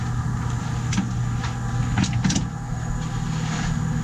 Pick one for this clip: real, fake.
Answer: real